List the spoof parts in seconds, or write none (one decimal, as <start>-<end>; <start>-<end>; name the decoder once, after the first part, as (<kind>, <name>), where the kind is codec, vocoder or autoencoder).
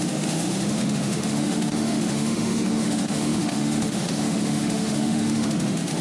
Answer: 0.0-6.0 (autoencoder, DAC-VAE)